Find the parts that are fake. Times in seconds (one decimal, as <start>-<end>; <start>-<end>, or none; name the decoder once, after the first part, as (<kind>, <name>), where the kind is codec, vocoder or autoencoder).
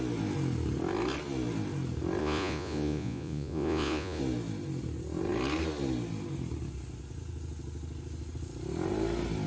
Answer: 2.2-4.2 (vocoder, Vocos)